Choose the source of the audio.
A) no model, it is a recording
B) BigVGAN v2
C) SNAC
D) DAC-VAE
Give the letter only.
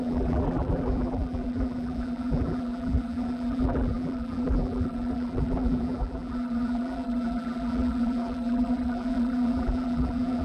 B